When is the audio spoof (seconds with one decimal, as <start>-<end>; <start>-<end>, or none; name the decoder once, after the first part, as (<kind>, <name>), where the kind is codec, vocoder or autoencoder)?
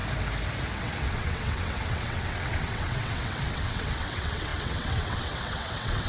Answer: 0.8-6.1 (vocoder, WaveNeXt)